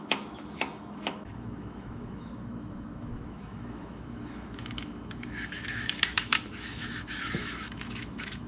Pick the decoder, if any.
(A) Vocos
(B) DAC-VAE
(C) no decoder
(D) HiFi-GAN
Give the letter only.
B